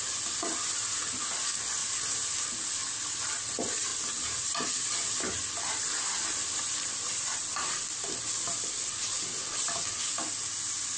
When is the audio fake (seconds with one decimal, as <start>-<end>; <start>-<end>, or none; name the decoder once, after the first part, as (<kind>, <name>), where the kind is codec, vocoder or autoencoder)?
0.0-1.8 (vocoder, BigVGAN v2); 3.4-3.9; 4.6-11.0